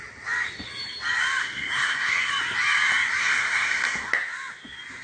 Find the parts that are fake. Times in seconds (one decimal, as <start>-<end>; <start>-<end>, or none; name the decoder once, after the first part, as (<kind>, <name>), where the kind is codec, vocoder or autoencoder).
1.4-2.3 (codec, SNAC); 3.2-4.1